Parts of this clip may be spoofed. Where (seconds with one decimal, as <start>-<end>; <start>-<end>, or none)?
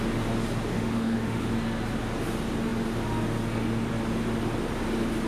0.7-1.5